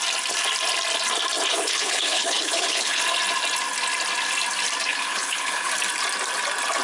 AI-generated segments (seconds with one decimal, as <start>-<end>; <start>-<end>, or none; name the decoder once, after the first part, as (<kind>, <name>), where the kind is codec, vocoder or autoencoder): 1.5-3.0 (codec, HILCodec); 4.9-5.7